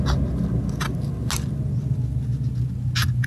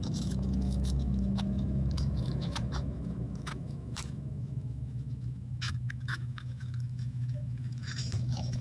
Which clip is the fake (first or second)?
second